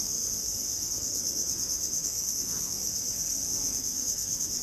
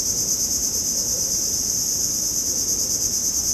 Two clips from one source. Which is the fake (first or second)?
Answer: first